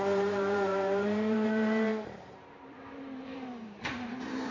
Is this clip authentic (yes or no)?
no